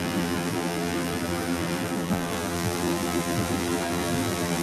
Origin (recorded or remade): remade